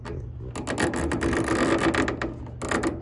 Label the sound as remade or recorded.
recorded